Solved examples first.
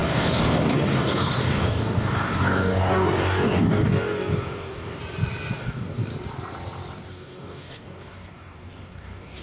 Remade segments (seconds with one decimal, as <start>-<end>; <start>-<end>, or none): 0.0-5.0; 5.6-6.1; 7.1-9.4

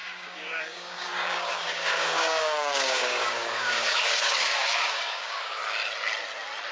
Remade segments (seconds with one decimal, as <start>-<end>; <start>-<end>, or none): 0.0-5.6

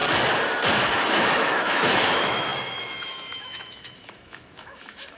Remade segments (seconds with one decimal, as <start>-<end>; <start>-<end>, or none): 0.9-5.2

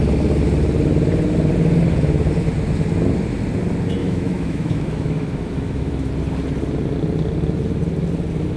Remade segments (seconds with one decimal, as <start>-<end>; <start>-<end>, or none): 4.0-6.1